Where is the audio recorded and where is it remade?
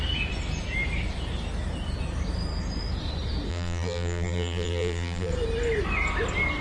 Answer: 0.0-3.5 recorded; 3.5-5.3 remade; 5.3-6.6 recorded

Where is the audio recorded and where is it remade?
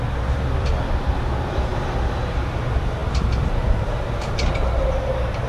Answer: 0.0-5.5 recorded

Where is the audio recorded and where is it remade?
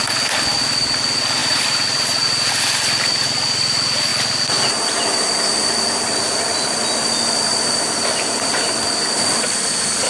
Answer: 0.0-1.4 recorded; 1.4-2.5 remade; 2.5-10.1 recorded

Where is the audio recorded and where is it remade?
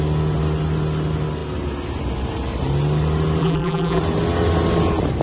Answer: 0.0-3.4 recorded; 3.4-4.0 remade; 4.0-5.2 recorded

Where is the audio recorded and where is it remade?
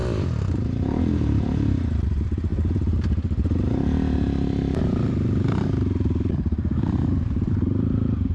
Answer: 0.0-0.5 recorded; 0.5-8.3 remade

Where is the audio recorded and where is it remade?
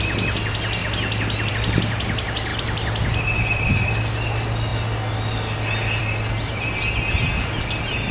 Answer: 0.0-2.5 recorded; 2.5-3.7 remade; 3.7-8.1 recorded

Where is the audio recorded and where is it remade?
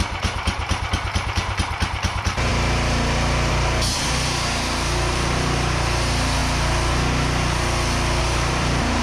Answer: 0.0-6.4 remade; 6.4-8.2 recorded; 8.2-9.0 remade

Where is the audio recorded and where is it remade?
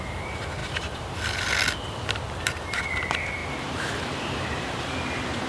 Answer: 0.0-0.6 recorded; 0.6-1.2 remade; 1.2-3.4 recorded; 3.4-5.5 remade